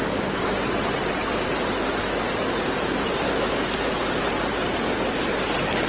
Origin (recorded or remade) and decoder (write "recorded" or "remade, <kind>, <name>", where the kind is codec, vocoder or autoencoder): recorded